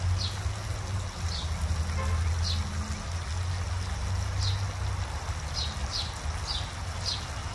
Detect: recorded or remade recorded